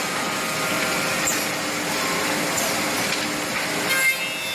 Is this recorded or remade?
recorded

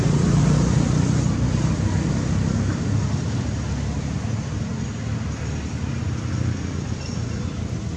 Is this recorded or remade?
recorded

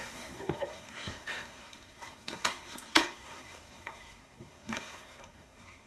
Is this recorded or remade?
remade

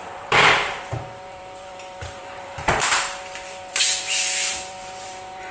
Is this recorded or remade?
remade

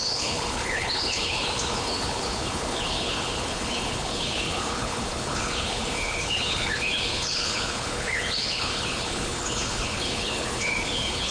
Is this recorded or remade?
remade